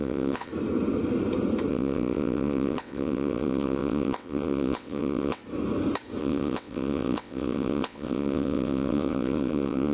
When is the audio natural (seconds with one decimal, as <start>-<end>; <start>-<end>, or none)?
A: 0.5-1.7; 5.4-6.2